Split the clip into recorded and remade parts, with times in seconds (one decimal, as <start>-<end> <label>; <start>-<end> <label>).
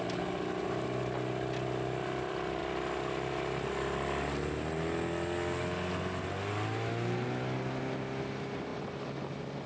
0.0-9.7 recorded